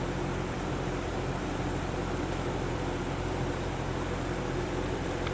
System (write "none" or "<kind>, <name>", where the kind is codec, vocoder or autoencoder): vocoder, BigVGAN v2